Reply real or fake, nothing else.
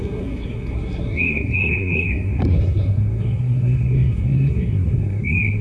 fake